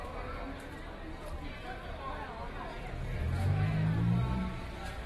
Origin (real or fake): real